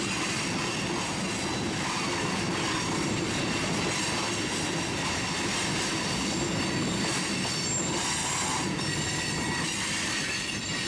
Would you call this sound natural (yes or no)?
yes